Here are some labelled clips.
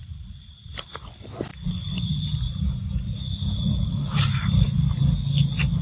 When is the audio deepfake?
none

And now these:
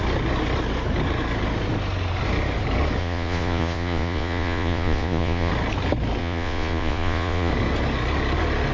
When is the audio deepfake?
3.0-5.5 (vocoder, Vocos); 6.2-7.5

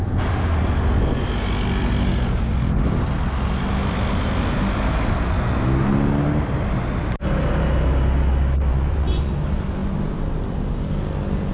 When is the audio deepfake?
8.7-9.3 (vocoder, Vocos)

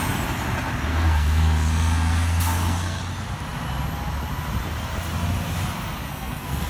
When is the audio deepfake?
0.9-3.0 (codec, SNAC); 6.1-6.7

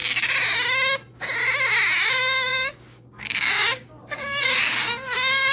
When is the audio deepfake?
2.1-5.5 (codec, DAC)

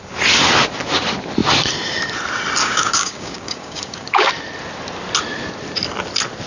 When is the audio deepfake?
2.6-4.3 (codec, DAC)